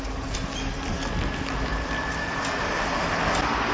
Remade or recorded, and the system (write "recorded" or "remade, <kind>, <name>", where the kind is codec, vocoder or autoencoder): recorded